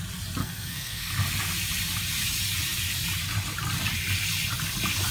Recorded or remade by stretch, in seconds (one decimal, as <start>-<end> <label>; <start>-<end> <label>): 0.0-0.4 recorded; 0.4-1.1 remade; 1.1-5.1 recorded